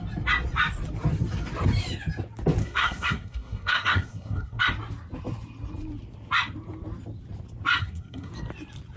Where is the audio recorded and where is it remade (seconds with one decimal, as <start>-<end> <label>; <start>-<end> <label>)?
0.0-2.6 recorded; 2.6-4.6 remade; 4.6-7.8 recorded; 7.8-8.3 remade; 8.3-9.0 recorded